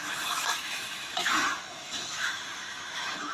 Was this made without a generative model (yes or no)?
no